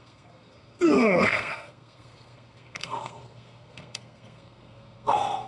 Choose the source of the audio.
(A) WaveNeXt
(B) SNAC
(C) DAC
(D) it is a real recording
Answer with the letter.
B